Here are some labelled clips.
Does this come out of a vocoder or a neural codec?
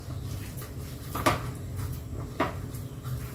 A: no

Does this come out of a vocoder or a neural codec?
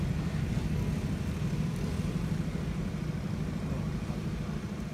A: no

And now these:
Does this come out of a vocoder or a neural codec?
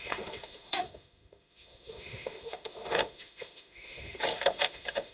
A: yes